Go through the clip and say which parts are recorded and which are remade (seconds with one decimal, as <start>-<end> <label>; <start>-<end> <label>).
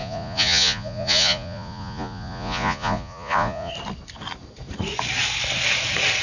0.0-3.7 remade; 3.7-6.2 recorded